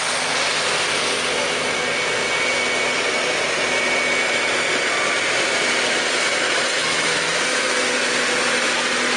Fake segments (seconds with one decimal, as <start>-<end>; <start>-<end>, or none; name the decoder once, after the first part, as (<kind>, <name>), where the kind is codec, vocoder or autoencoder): 6.8-7.6 (autoencoder, DAC-VAE)